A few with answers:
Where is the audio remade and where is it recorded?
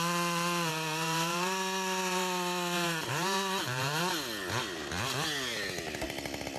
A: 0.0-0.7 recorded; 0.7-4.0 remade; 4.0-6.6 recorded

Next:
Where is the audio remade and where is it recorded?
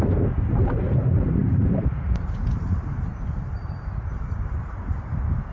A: 0.0-1.4 recorded; 1.4-4.5 remade; 4.5-5.5 recorded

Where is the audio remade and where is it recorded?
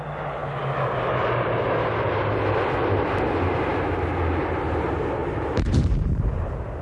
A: 0.0-5.2 recorded; 5.2-6.3 remade; 6.3-6.8 recorded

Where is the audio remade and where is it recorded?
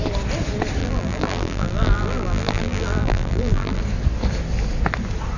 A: 0.0-0.8 recorded; 0.8-3.8 remade; 3.8-5.4 recorded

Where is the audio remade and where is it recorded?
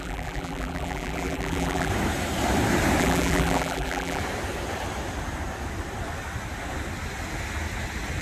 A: 0.0-1.9 remade; 1.9-3.0 recorded; 3.0-4.2 remade; 4.2-8.2 recorded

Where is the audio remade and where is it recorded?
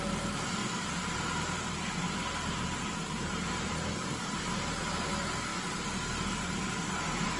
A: 0.0-0.6 remade; 0.6-3.6 recorded; 3.6-7.4 remade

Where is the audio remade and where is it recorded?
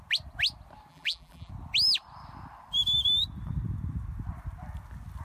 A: 0.0-0.9 recorded; 0.9-1.5 remade; 1.5-5.2 recorded